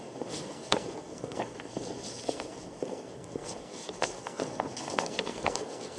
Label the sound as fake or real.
fake